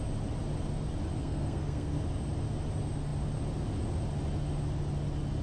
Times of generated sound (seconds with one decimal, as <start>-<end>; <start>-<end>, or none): 1.2-2.0